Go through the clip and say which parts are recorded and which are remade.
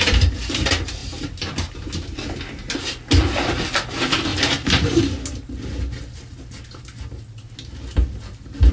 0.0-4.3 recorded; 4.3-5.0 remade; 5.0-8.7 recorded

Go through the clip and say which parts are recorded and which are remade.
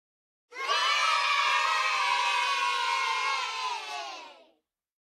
0.0-5.1 recorded